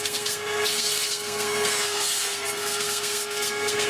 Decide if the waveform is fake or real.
fake